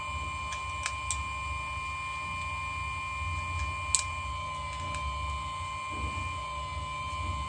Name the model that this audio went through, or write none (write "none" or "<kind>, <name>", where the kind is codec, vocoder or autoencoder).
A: none